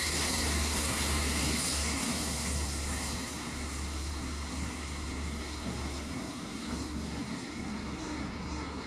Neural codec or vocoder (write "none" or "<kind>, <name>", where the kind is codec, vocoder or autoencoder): codec, SNAC